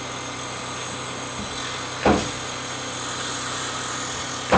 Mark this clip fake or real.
real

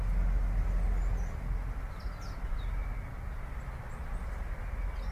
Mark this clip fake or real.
real